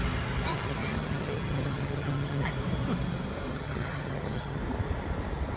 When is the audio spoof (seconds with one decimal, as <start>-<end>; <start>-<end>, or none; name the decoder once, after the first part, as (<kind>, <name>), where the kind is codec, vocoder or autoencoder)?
0.5-2.5 (vocoder, HiFi-GAN); 3.5-4.6